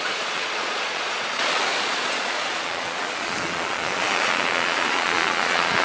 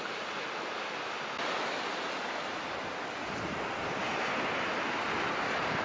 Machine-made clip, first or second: first